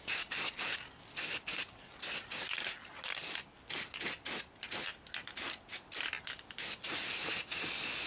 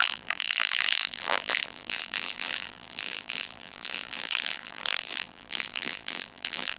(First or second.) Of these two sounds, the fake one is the second